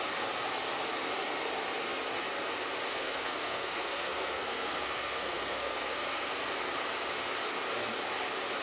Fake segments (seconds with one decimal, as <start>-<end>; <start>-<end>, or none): 2.9-6.3